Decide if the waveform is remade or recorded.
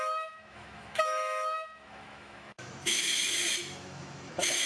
remade